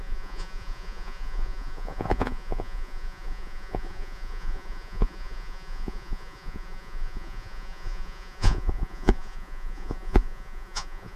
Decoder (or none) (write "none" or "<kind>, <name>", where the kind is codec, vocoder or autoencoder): vocoder, Vocos